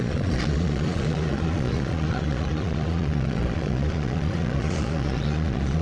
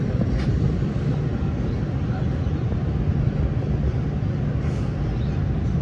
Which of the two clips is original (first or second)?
second